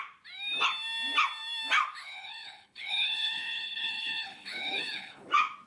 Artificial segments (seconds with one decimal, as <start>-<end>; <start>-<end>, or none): 2.0-5.3